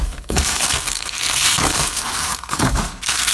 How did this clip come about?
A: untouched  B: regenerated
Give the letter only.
B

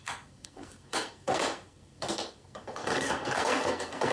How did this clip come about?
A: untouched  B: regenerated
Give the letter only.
B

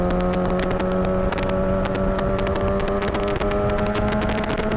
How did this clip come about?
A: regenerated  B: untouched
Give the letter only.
B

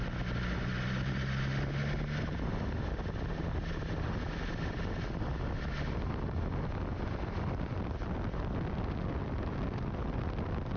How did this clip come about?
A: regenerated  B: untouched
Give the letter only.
B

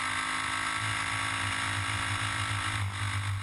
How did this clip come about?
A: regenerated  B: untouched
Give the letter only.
B